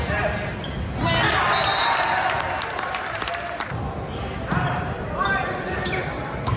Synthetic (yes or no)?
no